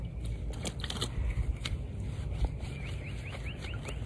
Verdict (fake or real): real